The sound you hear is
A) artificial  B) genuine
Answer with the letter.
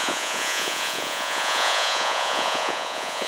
A